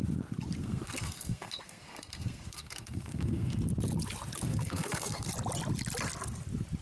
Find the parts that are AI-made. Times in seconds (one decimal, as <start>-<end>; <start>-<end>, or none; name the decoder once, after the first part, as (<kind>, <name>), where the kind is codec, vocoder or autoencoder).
0.6-3.6 (codec, SNAC); 4.5-5.3